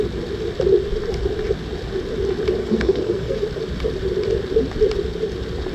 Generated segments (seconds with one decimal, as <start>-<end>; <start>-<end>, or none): 2.6-3.4